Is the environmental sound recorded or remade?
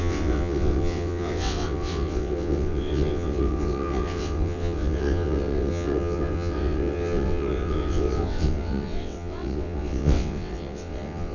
remade